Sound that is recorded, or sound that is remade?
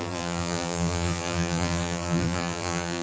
remade